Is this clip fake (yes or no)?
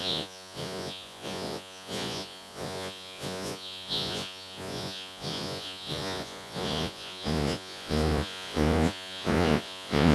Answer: yes